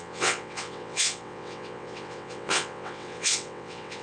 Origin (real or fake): fake